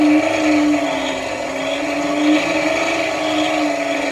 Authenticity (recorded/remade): recorded